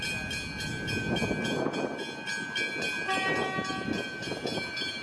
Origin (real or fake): real